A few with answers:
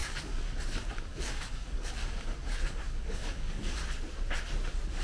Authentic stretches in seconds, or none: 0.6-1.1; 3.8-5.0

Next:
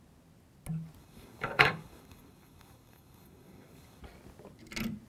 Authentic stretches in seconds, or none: 0.0-1.0; 4.0-5.1

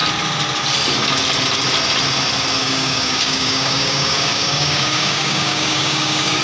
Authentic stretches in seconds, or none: 0.0-2.6

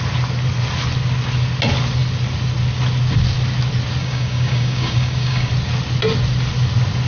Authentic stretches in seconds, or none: 0.0-4.0; 5.5-7.1

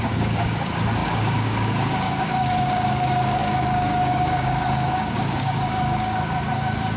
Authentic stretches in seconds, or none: none

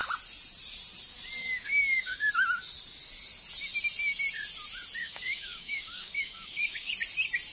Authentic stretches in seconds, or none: 0.0-1.4; 2.3-5.0; 6.9-7.5

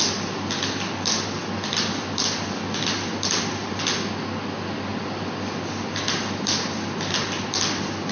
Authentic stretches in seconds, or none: 0.0-8.1